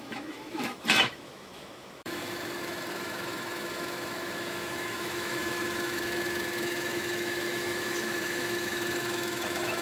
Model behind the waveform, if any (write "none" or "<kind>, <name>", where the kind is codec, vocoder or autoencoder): autoencoder, DAC-VAE